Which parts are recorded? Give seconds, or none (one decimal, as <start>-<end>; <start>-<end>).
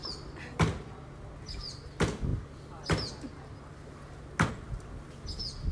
0.0-5.7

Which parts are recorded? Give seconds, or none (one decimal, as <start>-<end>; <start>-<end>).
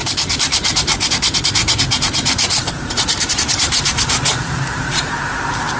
1.1-1.6; 5.1-5.8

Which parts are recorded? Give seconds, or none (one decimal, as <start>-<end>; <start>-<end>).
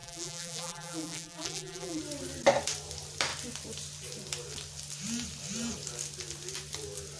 2.0-7.2